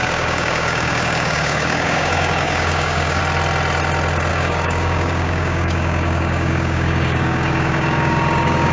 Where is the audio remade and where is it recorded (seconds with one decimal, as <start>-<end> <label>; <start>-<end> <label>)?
0.0-3.2 remade; 3.2-4.3 recorded; 4.3-8.7 remade